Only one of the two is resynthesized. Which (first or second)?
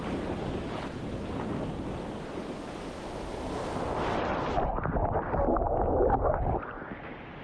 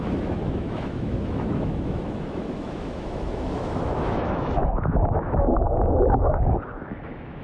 second